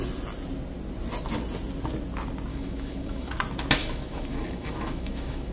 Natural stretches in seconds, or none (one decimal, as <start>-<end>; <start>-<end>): 0.0-2.5; 3.3-3.8